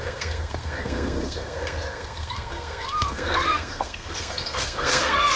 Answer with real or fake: fake